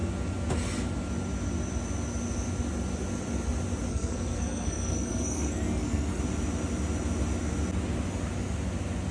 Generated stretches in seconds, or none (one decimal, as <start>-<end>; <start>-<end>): 3.9-6.2